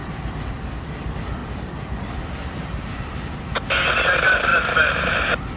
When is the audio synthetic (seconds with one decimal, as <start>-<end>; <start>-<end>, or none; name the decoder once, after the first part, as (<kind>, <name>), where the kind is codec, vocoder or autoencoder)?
0.0-0.5 (vocoder, BigVGAN v2); 1.4-3.2